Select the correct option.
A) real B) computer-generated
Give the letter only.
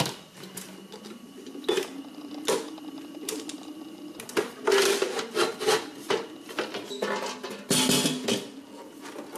A